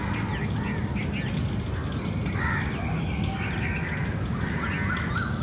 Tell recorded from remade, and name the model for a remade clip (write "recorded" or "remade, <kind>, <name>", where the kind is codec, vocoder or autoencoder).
recorded